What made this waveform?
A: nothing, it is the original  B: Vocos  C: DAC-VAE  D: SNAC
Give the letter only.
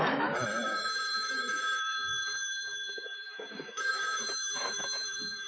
C